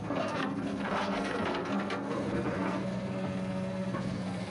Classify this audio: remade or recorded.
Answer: remade